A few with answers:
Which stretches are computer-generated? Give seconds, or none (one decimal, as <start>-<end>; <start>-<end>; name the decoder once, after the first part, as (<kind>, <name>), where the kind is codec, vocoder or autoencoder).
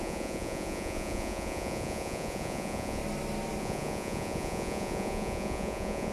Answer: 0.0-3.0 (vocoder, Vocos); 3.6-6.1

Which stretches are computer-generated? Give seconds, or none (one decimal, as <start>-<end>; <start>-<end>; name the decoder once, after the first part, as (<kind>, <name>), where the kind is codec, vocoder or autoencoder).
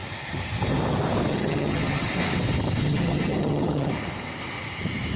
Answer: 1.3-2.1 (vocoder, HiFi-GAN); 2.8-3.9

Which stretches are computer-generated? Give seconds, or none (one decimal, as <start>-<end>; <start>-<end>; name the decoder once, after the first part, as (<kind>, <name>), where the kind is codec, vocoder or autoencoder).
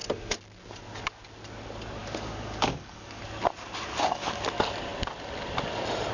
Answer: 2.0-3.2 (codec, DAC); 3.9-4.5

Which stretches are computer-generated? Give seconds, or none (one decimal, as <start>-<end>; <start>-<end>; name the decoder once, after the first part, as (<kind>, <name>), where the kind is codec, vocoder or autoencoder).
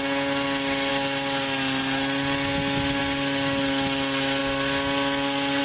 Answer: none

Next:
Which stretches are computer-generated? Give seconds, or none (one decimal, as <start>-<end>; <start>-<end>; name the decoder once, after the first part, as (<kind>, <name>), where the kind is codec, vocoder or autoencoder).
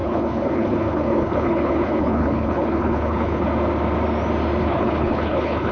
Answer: 0.0-3.4 (codec, HILCodec); 4.6-5.7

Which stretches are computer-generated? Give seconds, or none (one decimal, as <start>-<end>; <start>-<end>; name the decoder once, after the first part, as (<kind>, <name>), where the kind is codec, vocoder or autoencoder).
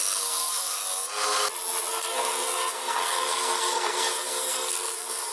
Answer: 0.0-0.8 (codec, SNAC); 1.9-5.3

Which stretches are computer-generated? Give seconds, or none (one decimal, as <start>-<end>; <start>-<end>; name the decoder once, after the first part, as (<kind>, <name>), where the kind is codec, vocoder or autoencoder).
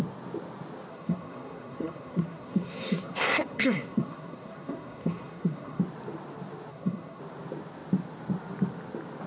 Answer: 0.9-5.8 (codec, SNAC); 6.7-7.2